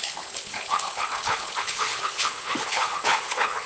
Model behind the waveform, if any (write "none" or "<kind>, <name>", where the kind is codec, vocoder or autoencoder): codec, HILCodec